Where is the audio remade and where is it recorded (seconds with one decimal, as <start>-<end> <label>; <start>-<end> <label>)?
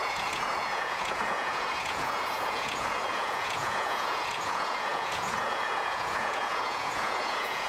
0.0-7.7 remade